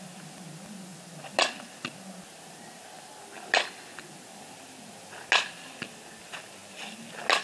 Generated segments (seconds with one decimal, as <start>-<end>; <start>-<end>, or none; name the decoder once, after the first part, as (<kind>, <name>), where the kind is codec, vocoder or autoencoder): none